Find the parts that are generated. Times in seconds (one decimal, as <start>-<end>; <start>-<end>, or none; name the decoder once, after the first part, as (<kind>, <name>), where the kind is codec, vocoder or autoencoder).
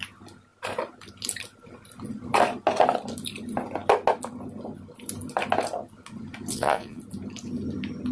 6.5-7.0 (vocoder, Vocos)